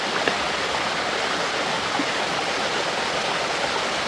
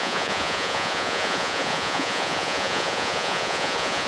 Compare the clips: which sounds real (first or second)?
first